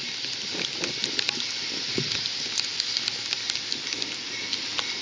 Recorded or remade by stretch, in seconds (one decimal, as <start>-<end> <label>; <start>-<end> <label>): 0.0-5.0 recorded

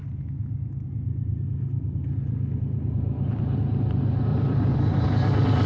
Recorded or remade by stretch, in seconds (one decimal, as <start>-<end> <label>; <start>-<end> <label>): 0.0-4.3 recorded; 4.3-5.1 remade; 5.1-5.7 recorded

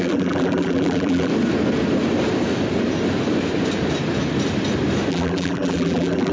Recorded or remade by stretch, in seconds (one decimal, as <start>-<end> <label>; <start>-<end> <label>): 0.0-1.3 remade; 1.3-5.1 recorded; 5.1-6.3 remade

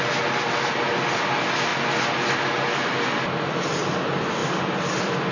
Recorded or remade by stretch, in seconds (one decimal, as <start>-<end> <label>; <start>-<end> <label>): 0.0-4.4 recorded; 4.4-5.3 remade

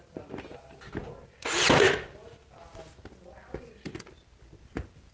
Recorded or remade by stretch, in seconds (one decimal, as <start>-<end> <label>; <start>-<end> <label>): 0.0-5.1 recorded